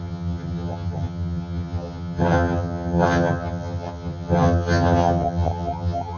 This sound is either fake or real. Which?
fake